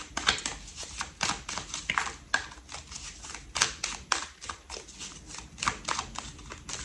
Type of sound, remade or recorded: recorded